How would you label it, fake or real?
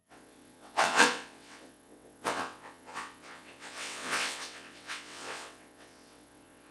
fake